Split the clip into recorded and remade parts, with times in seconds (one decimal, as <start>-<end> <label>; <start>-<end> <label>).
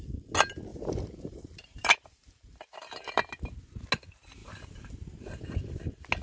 0.0-0.7 recorded; 0.7-3.1 remade; 3.1-4.4 recorded; 4.4-5.4 remade; 5.4-6.2 recorded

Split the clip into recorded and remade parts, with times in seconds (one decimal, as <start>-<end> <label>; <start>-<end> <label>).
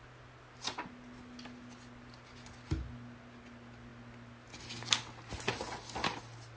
0.0-6.6 recorded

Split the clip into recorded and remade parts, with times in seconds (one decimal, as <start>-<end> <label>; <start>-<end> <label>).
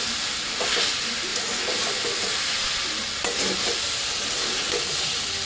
0.0-1.3 recorded; 1.3-3.4 remade; 3.4-5.5 recorded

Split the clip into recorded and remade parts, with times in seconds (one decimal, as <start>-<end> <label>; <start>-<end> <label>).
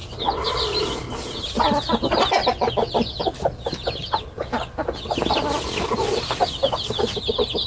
0.0-7.7 recorded